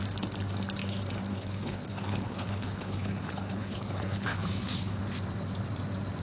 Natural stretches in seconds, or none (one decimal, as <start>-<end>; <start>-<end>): 0.0-1.3; 5.0-6.2